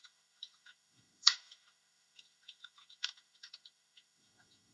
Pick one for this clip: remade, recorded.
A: remade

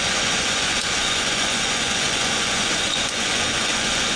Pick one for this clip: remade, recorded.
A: remade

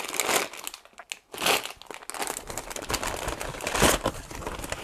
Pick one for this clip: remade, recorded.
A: recorded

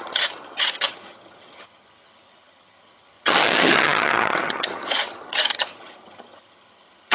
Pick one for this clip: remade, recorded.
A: remade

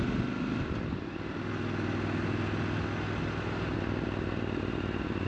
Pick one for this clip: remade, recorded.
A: recorded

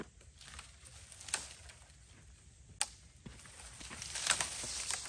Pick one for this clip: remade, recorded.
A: recorded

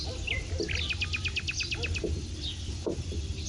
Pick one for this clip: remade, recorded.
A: recorded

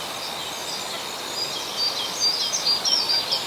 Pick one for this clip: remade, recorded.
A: recorded